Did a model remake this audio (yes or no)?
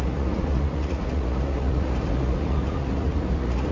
yes